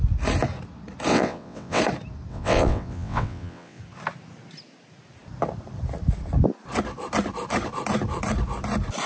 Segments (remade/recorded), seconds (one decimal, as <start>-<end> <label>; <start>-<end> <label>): 0.0-1.1 recorded; 1.1-1.8 remade; 1.8-2.3 recorded; 2.3-3.8 remade; 3.8-9.1 recorded